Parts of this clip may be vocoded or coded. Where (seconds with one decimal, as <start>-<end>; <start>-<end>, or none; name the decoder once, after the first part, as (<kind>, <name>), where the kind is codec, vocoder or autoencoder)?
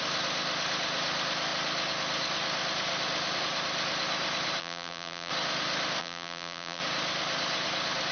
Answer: 4.6-5.3 (vocoder, BigVGAN v2); 6.0-6.8